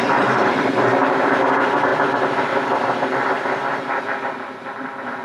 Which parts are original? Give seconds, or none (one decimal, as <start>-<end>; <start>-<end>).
none